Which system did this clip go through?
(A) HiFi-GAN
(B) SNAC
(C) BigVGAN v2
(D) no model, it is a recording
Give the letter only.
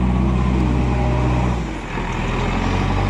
D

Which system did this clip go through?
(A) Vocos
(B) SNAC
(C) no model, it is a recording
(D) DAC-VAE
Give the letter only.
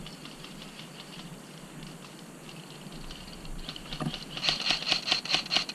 C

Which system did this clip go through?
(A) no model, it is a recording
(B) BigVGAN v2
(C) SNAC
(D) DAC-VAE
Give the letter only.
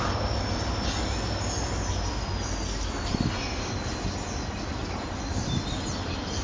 A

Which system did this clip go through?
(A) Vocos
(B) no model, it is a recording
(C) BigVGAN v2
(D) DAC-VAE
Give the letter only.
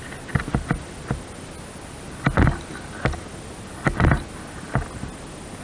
B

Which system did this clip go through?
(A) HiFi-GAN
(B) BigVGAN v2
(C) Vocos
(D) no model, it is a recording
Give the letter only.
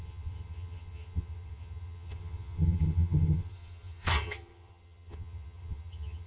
A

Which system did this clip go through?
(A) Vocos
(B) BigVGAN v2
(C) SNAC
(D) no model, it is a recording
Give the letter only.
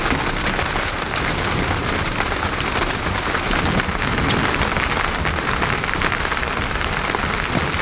D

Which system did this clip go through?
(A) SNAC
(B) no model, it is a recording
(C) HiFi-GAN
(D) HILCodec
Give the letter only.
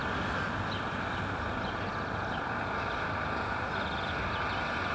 B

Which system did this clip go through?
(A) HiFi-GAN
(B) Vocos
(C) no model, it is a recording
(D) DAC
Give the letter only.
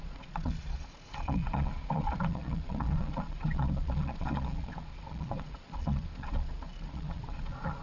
B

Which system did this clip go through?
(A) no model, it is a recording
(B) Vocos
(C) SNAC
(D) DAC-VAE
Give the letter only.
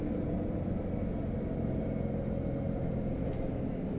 A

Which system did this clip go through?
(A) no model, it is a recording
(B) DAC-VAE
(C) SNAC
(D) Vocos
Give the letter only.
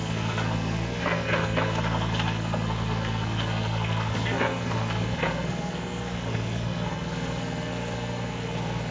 C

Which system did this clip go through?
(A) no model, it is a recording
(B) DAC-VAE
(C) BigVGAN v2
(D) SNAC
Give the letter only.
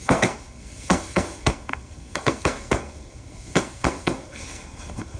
D